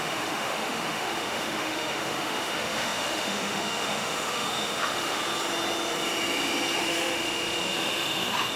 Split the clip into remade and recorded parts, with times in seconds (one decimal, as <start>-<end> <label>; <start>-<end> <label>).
0.0-5.2 remade; 5.2-6.8 recorded; 6.8-8.6 remade